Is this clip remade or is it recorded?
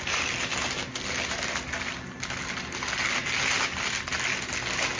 recorded